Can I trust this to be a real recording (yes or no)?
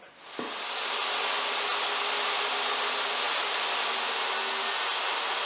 yes